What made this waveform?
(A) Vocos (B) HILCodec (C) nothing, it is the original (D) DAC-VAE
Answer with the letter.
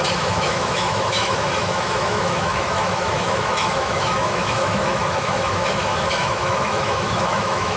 D